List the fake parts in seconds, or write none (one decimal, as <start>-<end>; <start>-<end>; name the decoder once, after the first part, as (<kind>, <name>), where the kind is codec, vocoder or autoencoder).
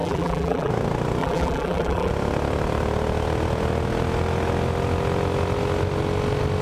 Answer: 0.0-0.7 (vocoder, BigVGAN v2); 1.2-2.1